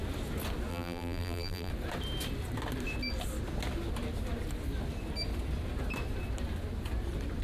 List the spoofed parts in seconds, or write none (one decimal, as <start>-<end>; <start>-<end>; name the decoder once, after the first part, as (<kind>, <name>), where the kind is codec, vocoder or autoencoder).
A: 0.7-1.7 (vocoder, BigVGAN v2)